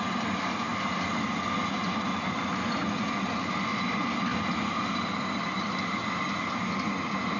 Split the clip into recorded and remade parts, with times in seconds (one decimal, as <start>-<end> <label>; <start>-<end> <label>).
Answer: 0.0-4.3 recorded; 4.3-6.0 remade; 6.0-7.4 recorded

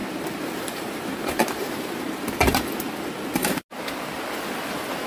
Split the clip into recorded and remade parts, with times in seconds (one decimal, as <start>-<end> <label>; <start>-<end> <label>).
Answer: 0.0-5.1 recorded

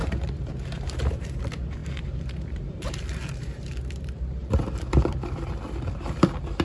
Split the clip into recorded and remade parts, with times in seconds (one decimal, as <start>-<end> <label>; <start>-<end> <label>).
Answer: 0.0-1.4 remade; 1.4-1.8 recorded; 1.8-5.5 remade; 5.5-6.6 recorded

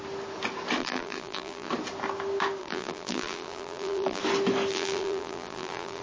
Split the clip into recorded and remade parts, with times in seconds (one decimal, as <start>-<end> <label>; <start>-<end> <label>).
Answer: 0.0-0.8 recorded; 0.8-1.7 remade; 1.7-2.6 recorded; 2.6-4.2 remade; 4.2-4.7 recorded; 4.7-6.0 remade

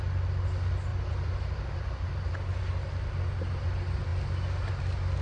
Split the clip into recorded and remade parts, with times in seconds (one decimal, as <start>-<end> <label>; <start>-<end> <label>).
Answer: 0.0-0.9 recorded; 0.9-2.3 remade; 2.3-5.2 recorded

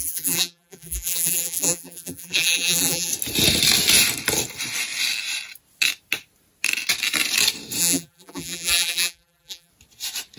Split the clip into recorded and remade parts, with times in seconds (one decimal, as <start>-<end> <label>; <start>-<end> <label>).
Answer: 0.0-3.1 remade; 3.1-7.8 recorded; 7.8-9.7 remade; 9.7-10.4 recorded

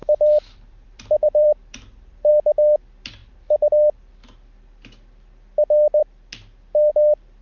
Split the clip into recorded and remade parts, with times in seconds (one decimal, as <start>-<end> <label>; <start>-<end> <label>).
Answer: 0.0-2.3 remade; 2.3-3.2 recorded; 3.2-3.7 remade; 3.7-7.4 recorded

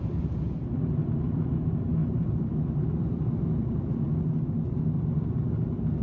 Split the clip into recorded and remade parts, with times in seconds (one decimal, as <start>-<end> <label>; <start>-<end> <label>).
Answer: 0.0-2.0 recorded; 2.0-3.9 remade; 3.9-6.0 recorded